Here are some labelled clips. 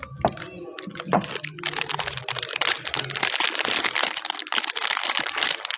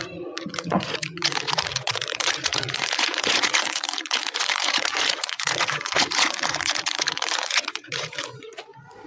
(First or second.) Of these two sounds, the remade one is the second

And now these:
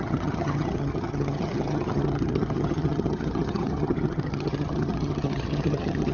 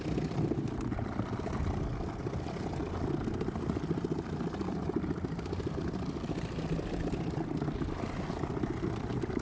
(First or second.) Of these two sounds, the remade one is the first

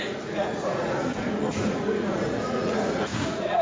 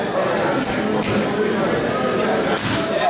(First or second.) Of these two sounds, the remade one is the first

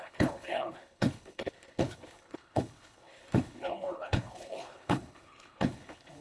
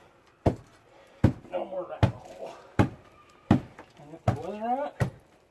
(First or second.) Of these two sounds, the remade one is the first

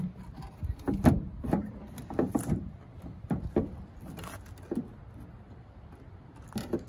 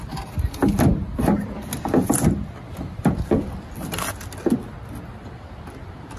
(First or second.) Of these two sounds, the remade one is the first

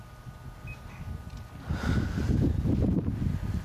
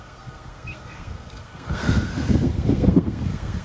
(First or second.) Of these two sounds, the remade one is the second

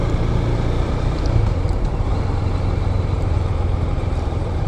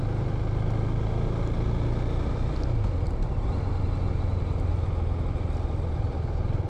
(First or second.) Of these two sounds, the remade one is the first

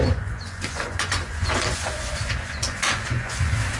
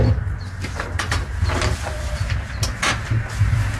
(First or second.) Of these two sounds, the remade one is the first